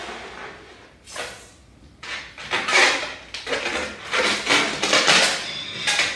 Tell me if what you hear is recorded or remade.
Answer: recorded